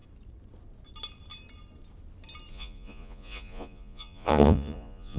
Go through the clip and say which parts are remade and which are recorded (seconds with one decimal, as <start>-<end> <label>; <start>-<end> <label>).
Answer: 0.0-2.5 recorded; 2.5-5.2 remade